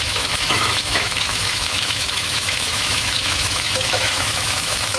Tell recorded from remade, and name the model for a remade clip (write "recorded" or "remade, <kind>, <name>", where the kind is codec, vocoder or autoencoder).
remade, autoencoder, DAC-VAE